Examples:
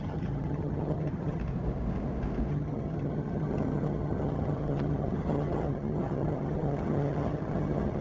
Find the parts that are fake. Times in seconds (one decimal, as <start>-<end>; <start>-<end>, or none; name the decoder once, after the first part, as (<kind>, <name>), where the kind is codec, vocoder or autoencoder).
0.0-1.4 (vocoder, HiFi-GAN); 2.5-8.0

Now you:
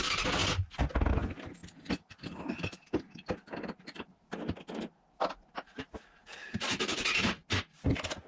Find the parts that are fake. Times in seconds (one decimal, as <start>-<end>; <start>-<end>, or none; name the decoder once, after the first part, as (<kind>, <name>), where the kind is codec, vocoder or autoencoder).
0.4-0.9 (vocoder, BigVGAN v2); 6.4-7.0

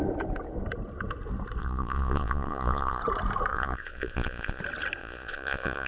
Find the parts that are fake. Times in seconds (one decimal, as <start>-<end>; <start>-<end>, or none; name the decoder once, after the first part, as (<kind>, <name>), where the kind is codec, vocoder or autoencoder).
1.6-3.0 (vocoder, Vocos); 3.5-4.6; 5.0-5.9

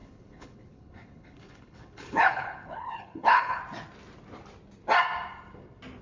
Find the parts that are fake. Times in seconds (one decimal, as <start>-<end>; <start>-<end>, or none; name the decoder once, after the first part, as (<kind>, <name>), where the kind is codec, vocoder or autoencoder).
0.0-3.6 (codec, HILCodec)

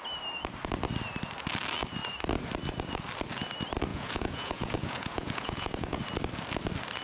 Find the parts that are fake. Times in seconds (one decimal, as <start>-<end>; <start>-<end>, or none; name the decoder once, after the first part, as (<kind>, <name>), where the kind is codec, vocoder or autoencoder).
3.9-6.0 (vocoder, Vocos)